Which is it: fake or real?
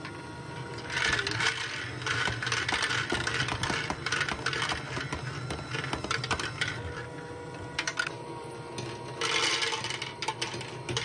real